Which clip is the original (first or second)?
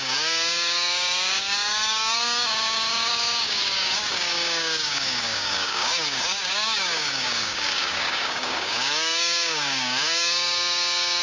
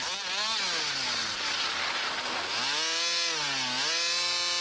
second